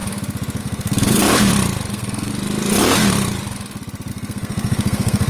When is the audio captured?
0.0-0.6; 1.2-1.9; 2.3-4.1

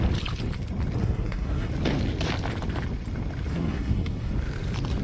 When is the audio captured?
0.0-1.0; 1.7-3.5; 4.3-5.0